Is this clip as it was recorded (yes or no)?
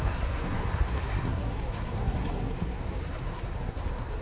no